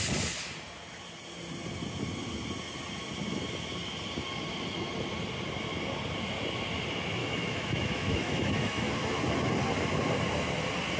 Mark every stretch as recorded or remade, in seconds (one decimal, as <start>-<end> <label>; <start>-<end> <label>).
0.0-7.2 recorded; 7.2-8.9 remade; 8.9-11.0 recorded